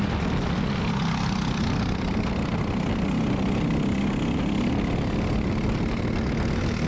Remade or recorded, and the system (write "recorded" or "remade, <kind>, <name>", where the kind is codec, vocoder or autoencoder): recorded